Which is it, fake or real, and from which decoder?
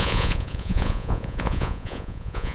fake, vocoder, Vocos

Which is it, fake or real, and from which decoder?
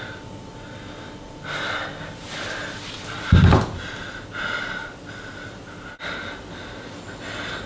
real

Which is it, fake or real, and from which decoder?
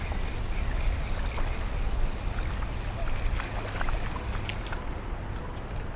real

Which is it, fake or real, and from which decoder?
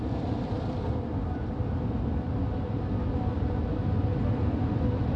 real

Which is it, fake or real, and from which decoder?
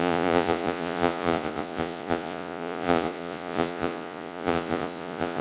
fake, vocoder, Vocos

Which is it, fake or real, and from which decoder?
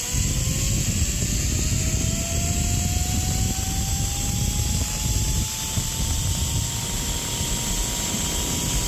real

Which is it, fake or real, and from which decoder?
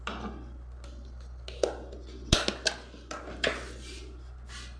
real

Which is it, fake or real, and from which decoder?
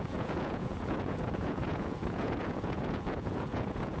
fake, vocoder, Vocos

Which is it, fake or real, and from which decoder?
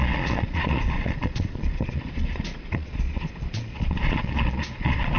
fake, vocoder, Vocos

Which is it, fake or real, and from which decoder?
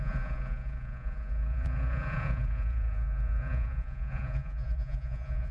fake, vocoder, Vocos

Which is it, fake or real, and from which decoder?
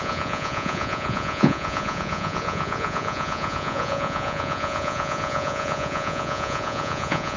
fake, vocoder, Vocos